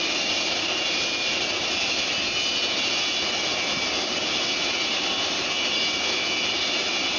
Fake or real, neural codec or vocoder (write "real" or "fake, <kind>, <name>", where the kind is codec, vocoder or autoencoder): real